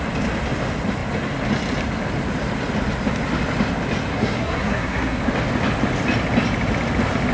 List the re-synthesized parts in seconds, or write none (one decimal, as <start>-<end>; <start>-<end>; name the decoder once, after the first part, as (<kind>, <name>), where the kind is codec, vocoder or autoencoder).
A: 4.1-5.2 (codec, SNAC)